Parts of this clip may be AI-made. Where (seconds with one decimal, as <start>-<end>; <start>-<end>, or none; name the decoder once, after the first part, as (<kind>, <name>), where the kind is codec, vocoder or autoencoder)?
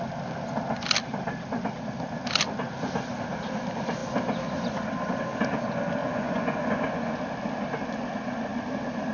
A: 6.0-7.2 (vocoder, Vocos)